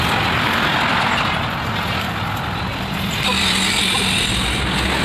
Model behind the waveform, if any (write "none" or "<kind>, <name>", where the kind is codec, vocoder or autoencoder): none